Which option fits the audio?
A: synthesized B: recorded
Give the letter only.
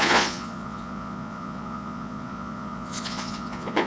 A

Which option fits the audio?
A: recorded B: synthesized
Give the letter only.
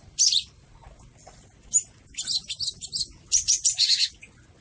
A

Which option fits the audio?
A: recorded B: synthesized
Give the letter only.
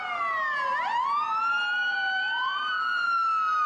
A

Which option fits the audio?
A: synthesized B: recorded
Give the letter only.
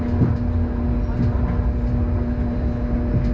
B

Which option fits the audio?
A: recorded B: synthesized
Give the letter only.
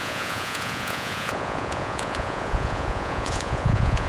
B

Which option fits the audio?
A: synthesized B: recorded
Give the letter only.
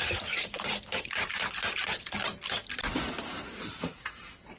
B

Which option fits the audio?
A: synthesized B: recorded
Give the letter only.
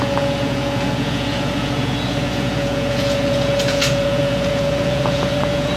A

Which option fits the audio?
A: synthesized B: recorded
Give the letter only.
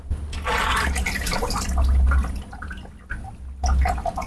B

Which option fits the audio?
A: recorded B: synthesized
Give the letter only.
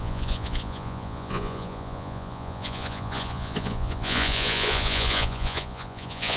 B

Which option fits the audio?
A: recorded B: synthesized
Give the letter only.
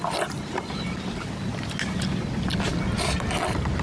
A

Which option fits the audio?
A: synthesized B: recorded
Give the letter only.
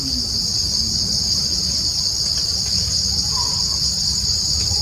B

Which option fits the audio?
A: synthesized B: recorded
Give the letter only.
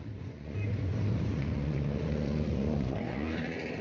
A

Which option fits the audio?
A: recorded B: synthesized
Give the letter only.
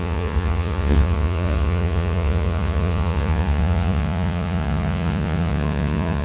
B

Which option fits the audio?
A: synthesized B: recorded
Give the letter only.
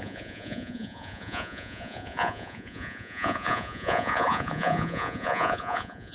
A